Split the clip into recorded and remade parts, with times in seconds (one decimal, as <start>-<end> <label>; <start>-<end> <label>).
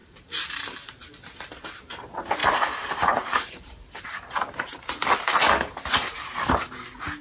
0.0-1.0 remade; 1.0-2.4 recorded; 2.4-6.5 remade; 6.5-7.2 recorded